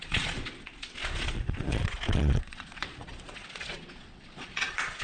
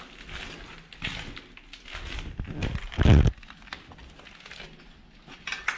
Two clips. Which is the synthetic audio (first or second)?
first